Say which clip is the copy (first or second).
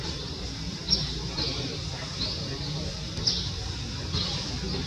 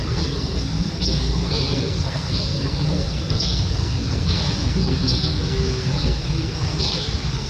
second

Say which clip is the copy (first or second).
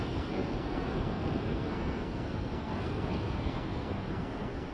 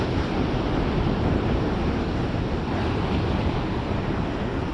first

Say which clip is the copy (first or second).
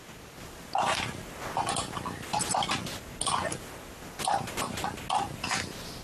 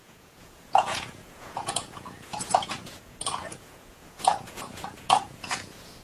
second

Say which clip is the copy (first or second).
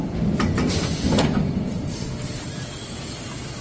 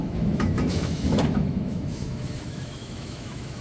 second